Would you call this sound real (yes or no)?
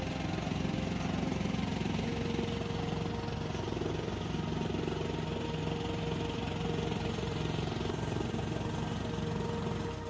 yes